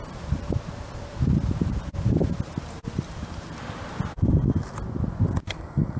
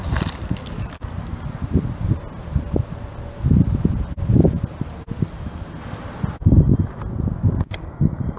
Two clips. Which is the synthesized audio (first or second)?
first